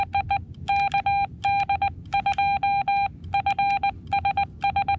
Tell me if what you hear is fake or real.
real